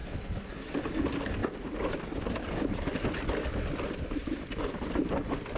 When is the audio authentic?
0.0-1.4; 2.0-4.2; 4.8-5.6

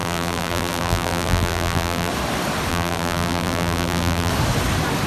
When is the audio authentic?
2.1-2.7; 4.3-5.1

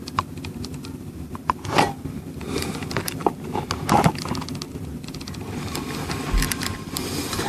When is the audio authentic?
3.2-5.0

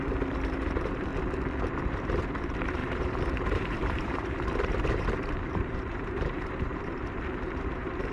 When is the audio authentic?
1.1-1.9